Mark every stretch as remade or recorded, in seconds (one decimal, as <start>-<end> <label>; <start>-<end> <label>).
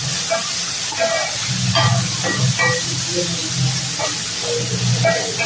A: 0.0-5.5 recorded